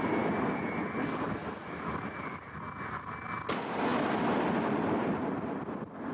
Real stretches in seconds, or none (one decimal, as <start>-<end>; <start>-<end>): 0.0-6.1

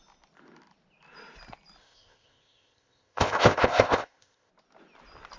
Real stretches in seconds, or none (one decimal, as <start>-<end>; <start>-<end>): 0.0-1.8; 4.5-5.4

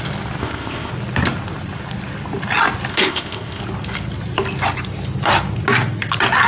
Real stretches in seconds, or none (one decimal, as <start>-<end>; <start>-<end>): 0.0-0.4; 0.9-2.9; 3.6-6.5

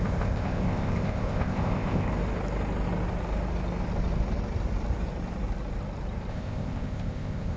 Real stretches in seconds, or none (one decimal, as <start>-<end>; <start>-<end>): 2.1-6.3

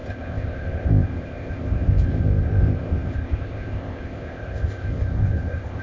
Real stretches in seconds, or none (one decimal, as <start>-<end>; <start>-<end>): none

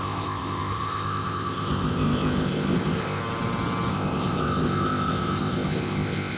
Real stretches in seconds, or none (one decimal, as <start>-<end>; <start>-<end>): 3.2-3.9

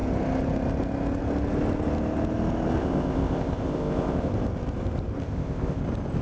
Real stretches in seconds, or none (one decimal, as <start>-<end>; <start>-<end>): 0.0-2.8; 4.3-5.2; 5.8-6.2